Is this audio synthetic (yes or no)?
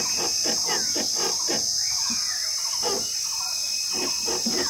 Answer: no